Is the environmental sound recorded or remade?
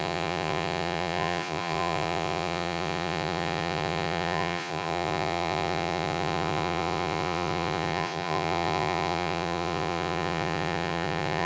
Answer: remade